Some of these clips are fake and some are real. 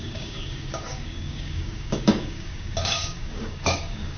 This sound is fake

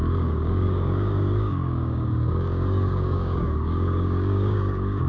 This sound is fake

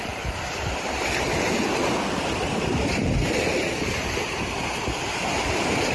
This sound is fake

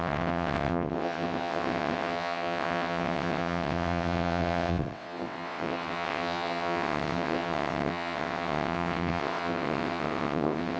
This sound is fake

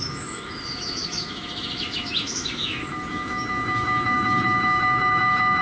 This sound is fake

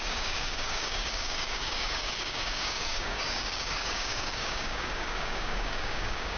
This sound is fake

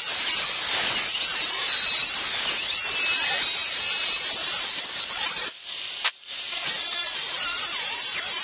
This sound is real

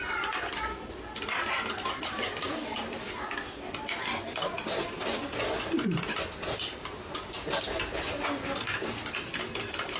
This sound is real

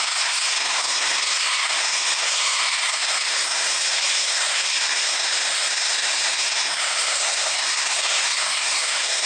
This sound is fake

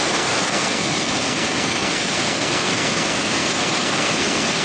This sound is fake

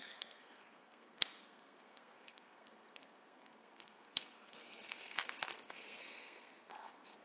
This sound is fake